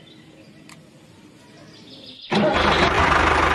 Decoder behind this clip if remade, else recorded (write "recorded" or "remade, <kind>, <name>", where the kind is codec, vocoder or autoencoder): recorded